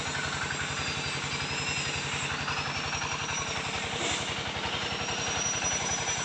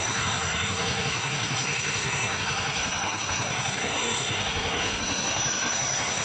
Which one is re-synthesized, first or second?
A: second